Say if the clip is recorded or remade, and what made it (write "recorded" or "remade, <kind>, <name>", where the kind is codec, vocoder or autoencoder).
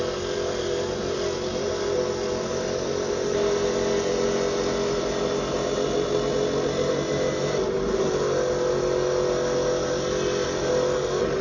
recorded